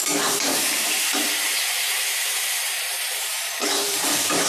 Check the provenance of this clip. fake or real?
fake